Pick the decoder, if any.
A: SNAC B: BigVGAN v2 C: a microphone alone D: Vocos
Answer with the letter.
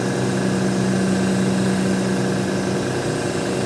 C